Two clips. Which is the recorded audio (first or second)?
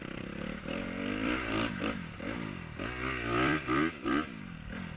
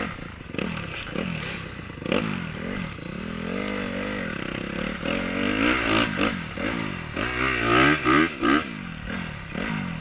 second